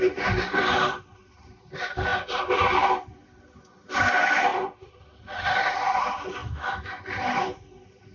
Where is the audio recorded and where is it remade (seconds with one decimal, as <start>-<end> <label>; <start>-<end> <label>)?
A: 0.0-6.4 recorded; 6.4-7.0 remade; 7.0-8.1 recorded